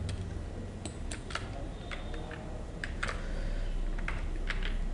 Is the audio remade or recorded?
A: recorded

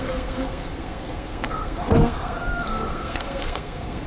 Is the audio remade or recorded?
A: remade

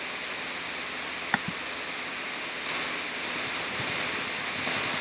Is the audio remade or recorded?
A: recorded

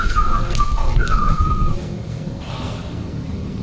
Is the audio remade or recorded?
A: remade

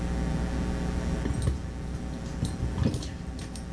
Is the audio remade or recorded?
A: recorded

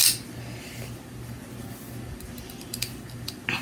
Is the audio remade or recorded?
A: recorded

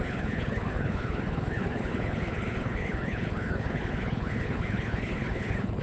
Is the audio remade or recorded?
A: remade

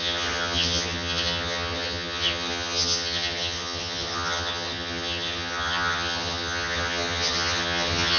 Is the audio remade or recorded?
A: remade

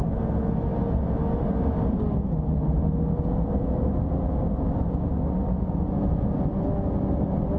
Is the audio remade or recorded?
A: recorded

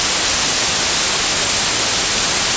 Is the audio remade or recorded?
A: recorded